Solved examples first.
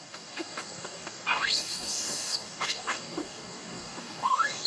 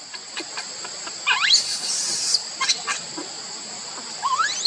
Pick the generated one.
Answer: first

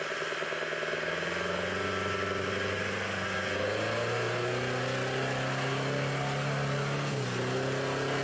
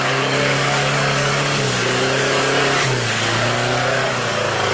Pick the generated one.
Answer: second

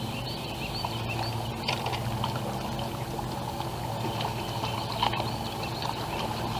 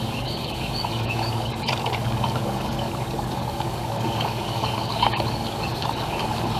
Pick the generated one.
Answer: second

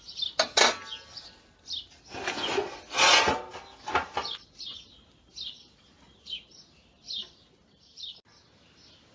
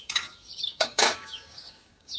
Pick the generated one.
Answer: second